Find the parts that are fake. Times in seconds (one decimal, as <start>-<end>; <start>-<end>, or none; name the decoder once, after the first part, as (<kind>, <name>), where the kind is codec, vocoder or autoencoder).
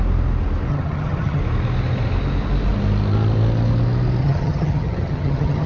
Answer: 0.7-1.4 (vocoder, HiFi-GAN); 4.2-5.7